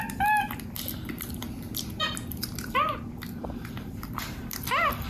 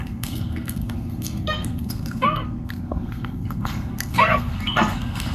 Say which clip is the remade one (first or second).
second